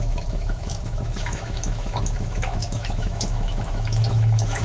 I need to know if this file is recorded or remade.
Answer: remade